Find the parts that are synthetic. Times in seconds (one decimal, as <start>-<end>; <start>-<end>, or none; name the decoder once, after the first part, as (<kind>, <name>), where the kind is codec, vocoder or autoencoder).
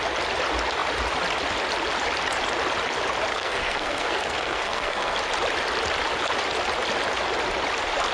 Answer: 3.3-5.2 (codec, SNAC)